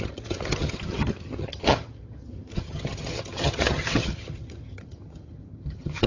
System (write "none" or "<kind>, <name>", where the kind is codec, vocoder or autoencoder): vocoder, HiFi-GAN